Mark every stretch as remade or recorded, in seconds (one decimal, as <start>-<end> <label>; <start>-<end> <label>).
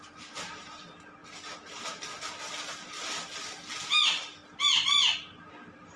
0.0-6.0 recorded